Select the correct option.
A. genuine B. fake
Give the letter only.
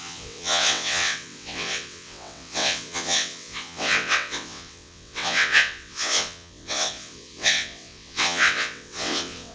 B